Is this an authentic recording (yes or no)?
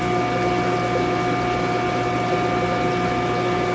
yes